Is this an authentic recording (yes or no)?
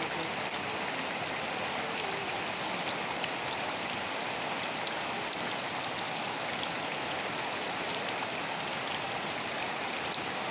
yes